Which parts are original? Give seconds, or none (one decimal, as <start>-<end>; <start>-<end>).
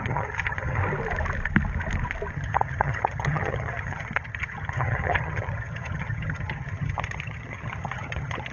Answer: 0.8-2.3